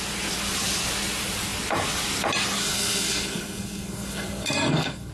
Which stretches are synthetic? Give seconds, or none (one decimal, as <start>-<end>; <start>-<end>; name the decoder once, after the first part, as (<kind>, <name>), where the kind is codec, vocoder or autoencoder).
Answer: 2.6-5.1 (codec, SNAC)